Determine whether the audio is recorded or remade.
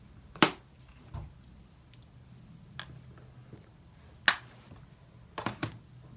recorded